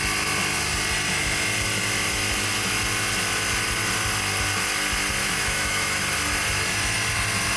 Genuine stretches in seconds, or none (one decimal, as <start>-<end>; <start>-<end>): 0.0-5.2; 6.0-7.6

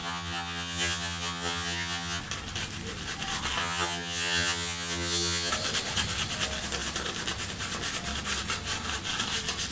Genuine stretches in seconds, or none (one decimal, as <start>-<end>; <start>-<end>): 2.2-3.6; 5.5-9.7